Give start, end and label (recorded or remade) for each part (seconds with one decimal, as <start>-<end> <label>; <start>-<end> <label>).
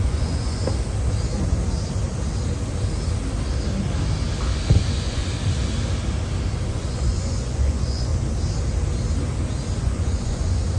0.0-0.6 remade; 0.6-4.7 recorded; 4.7-5.2 remade; 5.2-6.7 recorded; 6.7-8.1 remade; 8.1-9.8 recorded; 9.8-10.8 remade